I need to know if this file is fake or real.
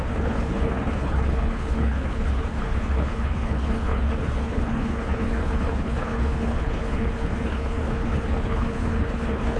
fake